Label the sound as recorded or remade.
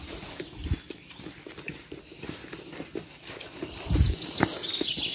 recorded